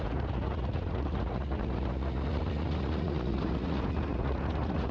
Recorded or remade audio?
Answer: remade